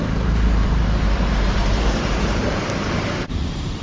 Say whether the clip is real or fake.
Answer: fake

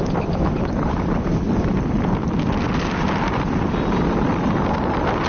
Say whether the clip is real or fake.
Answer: fake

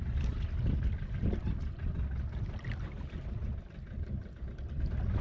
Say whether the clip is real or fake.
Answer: real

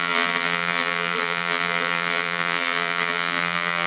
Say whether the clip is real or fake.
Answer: fake